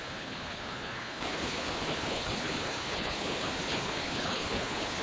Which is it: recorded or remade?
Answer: remade